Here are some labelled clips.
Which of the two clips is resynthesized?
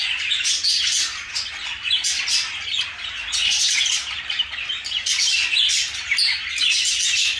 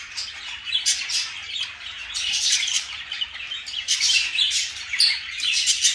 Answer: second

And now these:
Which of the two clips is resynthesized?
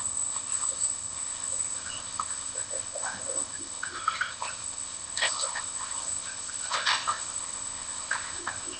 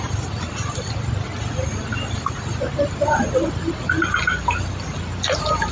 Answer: first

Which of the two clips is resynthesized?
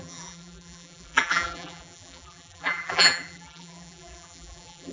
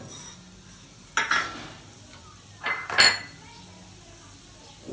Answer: first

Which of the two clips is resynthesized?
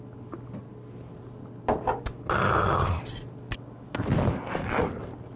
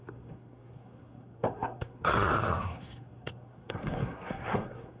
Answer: second